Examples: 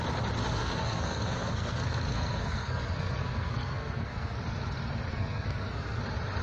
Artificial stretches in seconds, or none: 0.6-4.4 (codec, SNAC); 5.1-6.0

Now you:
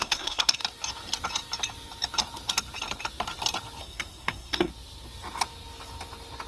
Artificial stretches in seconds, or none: 0.0-0.6 (codec, SNAC); 3.8-4.7

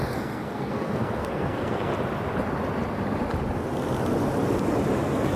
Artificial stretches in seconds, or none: 0.0-1.9 (codec, SNAC)

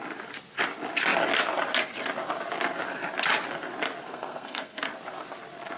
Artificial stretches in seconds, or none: 4.0-4.8 (codec, SNAC)

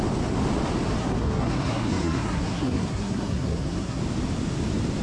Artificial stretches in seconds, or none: 1.0-4.0 (codec, SNAC)